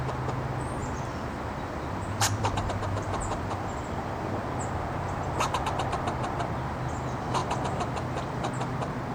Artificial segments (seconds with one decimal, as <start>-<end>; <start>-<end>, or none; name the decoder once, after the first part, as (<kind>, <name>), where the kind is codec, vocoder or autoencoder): 0.8-4.4 (vocoder, BigVGAN v2); 7.4-8.5